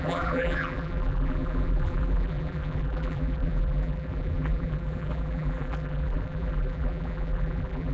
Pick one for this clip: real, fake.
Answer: fake